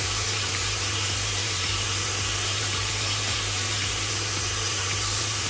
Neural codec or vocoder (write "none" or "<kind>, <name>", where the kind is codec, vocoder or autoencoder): vocoder, BigVGAN v2